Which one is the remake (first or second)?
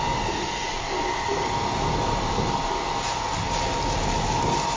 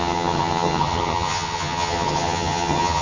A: second